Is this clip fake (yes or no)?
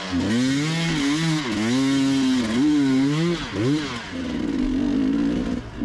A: no